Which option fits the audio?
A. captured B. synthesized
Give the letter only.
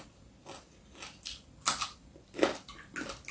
A